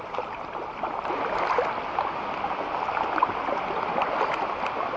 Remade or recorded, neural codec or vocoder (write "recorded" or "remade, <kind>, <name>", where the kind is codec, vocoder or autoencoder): recorded